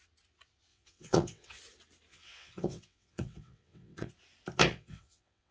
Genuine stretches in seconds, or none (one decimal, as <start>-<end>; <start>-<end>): 0.0-0.7; 1.6-2.1; 4.1-4.7